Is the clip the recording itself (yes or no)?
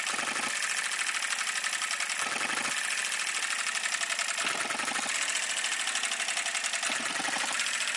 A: yes